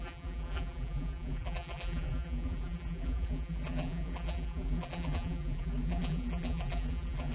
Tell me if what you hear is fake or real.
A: fake